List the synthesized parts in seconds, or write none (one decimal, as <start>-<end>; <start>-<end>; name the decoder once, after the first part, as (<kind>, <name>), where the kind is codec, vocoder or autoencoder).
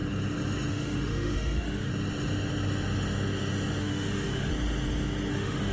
0.7-1.9 (autoencoder, DAC-VAE); 3.8-4.5; 5.3-5.7